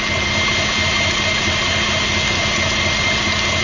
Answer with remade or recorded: recorded